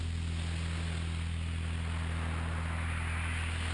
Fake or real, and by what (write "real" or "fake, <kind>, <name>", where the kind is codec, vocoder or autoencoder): real